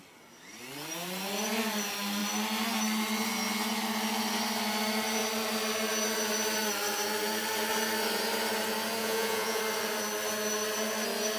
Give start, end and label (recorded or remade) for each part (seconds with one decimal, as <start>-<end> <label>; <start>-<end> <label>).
0.0-9.0 recorded; 9.0-9.6 remade; 9.6-11.4 recorded